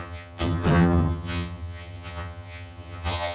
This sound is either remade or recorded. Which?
remade